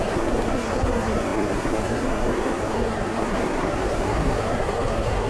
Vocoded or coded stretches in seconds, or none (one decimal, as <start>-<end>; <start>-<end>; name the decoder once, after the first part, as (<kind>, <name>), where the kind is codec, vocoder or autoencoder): 0.0-5.3 (codec, SNAC)

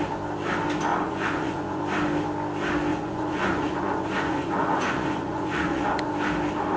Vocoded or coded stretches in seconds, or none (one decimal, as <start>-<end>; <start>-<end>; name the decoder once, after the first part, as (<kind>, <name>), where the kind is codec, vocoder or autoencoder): 0.9-1.8 (vocoder, Vocos); 2.9-6.1

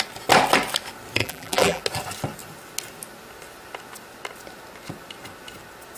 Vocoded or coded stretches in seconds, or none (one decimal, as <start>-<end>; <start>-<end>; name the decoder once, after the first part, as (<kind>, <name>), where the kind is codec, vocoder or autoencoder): 1.2-1.8 (vocoder, BigVGAN v2)

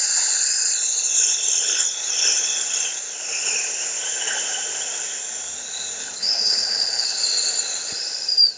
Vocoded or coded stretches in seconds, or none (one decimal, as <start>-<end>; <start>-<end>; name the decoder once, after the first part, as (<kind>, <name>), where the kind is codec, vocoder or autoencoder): 6.0-7.2 (codec, HILCodec)

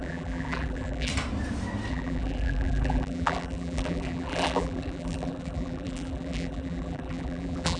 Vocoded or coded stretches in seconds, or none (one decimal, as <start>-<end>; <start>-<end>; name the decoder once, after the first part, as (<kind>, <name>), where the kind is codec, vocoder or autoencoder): 0.0-1.1 (vocoder, BigVGAN v2); 1.9-7.8

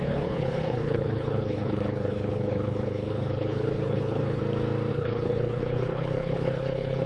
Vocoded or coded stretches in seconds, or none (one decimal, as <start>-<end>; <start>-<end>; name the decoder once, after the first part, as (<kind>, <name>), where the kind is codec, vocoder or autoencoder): 0.0-4.4 (codec, HILCodec); 4.9-7.1